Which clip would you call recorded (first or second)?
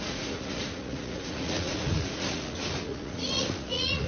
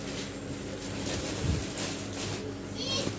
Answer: second